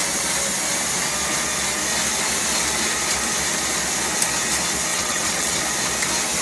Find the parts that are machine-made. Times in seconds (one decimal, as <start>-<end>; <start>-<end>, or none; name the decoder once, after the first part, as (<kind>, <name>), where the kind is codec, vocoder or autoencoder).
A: 4.9-5.6 (vocoder, WaveNeXt)